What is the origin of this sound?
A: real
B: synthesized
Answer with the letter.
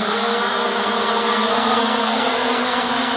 B